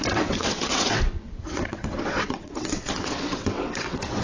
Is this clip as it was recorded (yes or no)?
no